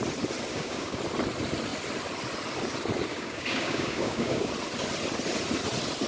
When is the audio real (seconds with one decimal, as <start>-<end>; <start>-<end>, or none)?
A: 0.0-0.5; 1.0-3.1; 4.5-6.1